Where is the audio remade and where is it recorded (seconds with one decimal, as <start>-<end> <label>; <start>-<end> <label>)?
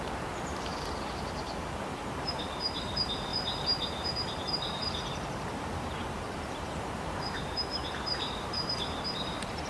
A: 0.0-0.7 remade; 0.7-1.3 recorded; 1.3-3.3 remade; 3.3-4.1 recorded; 4.1-9.7 remade